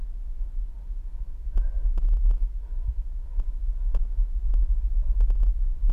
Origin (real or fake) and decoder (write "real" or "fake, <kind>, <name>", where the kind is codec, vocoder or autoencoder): real